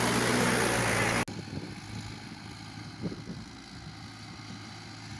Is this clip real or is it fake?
real